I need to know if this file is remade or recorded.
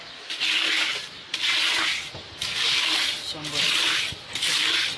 recorded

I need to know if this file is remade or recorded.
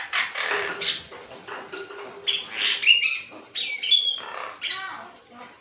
recorded